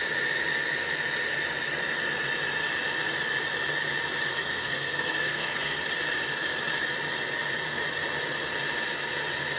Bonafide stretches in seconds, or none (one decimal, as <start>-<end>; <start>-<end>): 0.0-4.3; 5.8-9.6